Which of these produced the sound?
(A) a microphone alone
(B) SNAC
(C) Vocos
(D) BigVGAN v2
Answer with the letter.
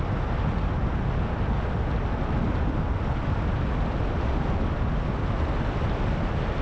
A